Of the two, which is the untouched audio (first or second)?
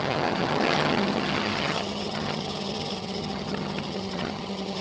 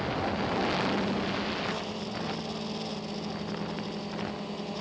second